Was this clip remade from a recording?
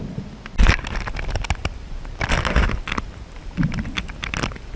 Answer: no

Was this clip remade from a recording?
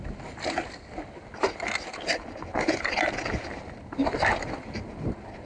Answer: no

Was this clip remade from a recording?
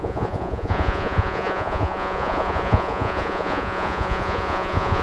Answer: yes